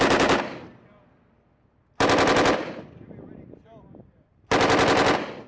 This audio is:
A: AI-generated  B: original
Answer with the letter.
B